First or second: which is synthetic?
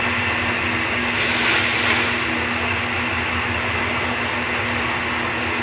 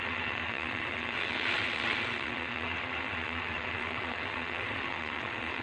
second